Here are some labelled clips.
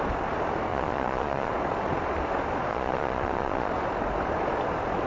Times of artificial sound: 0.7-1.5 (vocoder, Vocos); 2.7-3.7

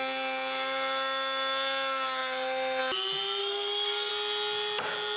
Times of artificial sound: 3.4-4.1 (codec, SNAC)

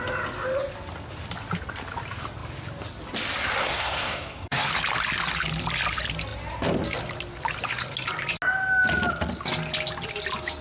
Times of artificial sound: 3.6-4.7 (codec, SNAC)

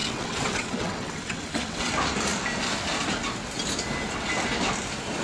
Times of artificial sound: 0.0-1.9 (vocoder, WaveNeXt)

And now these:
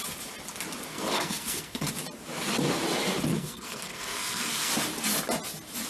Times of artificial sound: 0.9-1.9 (codec, SNAC); 3.3-4.7

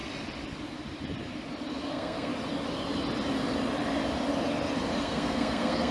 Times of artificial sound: 1.9-2.3 (codec, SNAC); 5.0-5.9

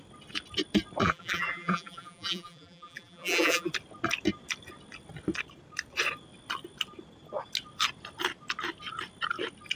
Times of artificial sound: 1.0-3.7 (vocoder, BigVGAN v2)